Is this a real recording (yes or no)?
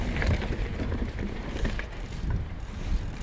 no